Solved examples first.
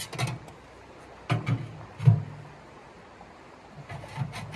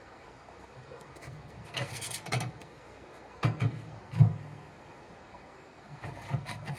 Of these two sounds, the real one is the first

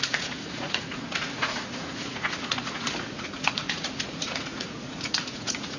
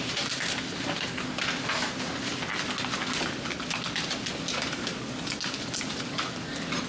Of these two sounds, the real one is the second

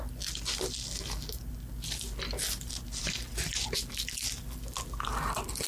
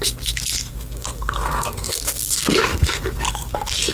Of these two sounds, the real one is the first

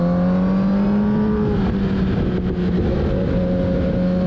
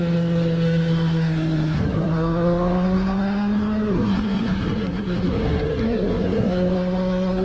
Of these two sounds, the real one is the first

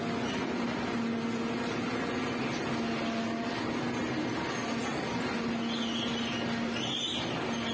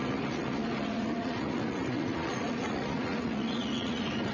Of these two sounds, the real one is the first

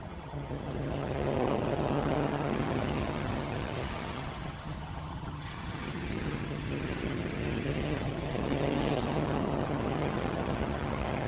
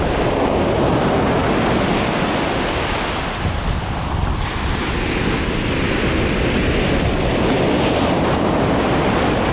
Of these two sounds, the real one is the second